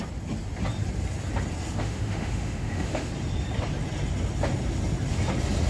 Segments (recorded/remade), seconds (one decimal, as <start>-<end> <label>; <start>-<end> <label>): 0.0-1.8 recorded; 1.8-3.1 remade; 3.1-5.7 recorded